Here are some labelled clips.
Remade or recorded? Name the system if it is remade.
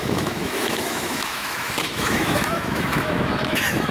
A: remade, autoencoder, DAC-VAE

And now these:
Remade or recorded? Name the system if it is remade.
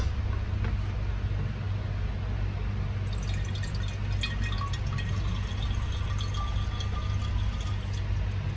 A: recorded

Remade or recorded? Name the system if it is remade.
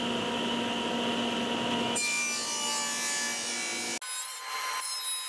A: recorded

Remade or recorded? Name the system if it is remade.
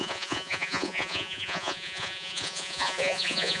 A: remade, vocoder, Vocos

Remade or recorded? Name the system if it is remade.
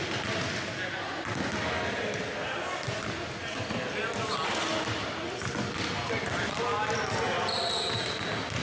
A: recorded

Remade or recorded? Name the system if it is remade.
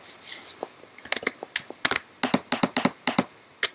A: recorded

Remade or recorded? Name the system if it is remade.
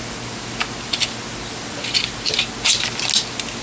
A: recorded